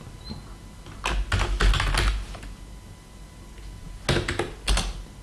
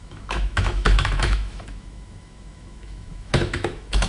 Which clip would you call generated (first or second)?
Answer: second